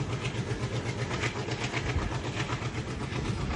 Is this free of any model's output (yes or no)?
yes